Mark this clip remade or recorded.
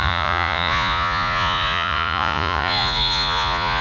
remade